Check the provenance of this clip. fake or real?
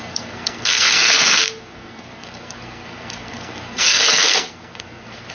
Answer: fake